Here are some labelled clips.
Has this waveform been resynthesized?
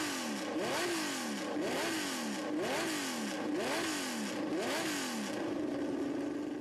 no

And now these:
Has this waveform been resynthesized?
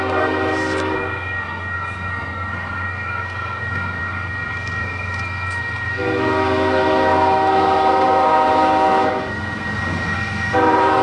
yes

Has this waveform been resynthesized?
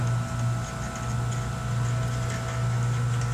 no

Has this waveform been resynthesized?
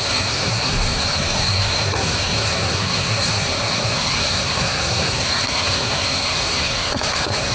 yes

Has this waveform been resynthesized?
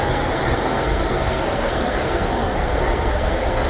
yes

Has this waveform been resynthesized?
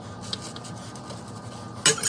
no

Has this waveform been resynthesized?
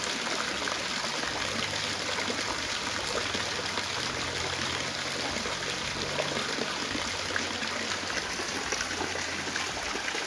no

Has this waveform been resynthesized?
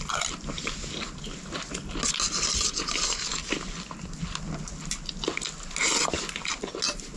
no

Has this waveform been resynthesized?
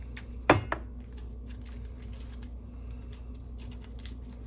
no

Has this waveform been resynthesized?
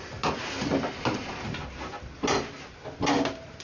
no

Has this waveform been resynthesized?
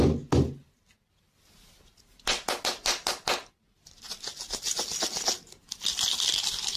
no